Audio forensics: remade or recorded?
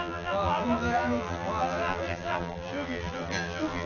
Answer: remade